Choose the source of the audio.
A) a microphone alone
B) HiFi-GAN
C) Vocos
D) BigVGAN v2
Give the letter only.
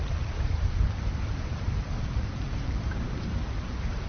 D